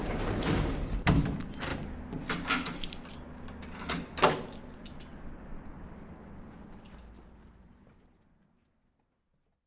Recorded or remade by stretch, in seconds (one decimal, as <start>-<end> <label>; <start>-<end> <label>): 0.0-9.7 recorded